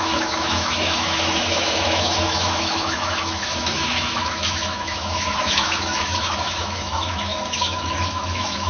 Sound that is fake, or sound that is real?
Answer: fake